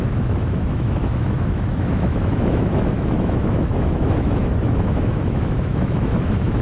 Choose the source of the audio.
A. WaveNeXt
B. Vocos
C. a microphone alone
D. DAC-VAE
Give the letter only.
D